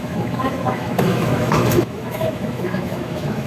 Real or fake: fake